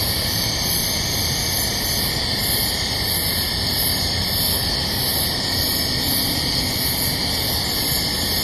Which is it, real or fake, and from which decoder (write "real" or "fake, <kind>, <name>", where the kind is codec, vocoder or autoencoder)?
real